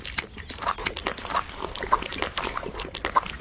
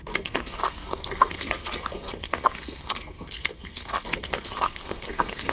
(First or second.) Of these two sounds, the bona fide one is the first